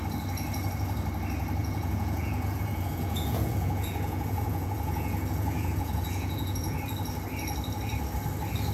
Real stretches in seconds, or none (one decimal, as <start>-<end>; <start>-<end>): 0.0-1.6; 6.8-8.7